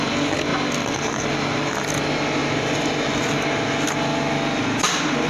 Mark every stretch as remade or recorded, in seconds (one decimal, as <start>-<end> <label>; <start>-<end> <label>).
0.0-2.4 recorded; 2.4-3.7 remade; 3.7-5.3 recorded